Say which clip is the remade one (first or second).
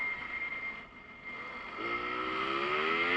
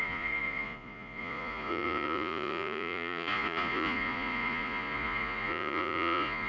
second